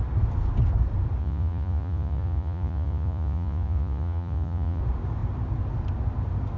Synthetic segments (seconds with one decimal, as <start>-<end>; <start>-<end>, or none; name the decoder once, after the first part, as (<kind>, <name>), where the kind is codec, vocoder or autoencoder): 1.2-4.8 (vocoder, Vocos)